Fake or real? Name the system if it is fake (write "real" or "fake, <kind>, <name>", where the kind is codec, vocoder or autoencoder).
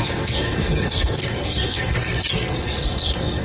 fake, codec, SNAC